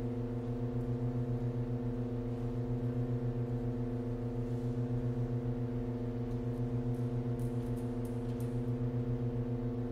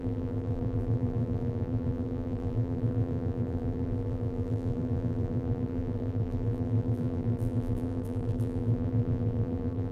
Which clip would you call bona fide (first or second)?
first